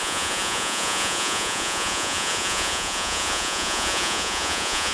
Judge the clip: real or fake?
fake